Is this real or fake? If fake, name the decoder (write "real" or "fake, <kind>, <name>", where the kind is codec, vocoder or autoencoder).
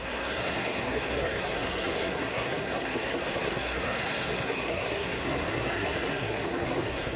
fake, codec, SNAC